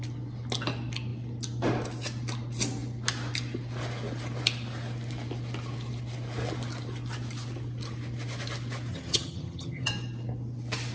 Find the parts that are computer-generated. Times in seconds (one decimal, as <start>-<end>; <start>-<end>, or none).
8.9-9.9